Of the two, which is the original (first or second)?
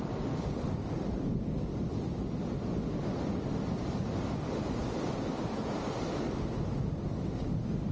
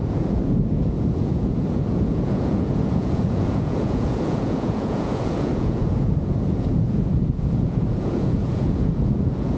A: first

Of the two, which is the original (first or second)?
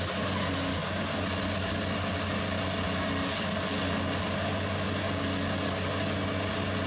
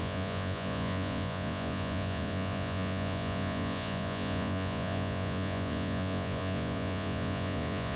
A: first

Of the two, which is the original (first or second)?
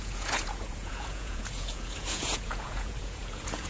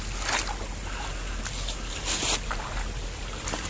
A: second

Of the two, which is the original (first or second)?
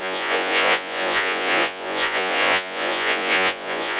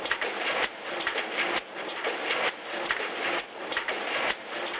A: second